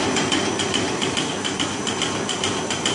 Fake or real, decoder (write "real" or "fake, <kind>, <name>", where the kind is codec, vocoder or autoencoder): real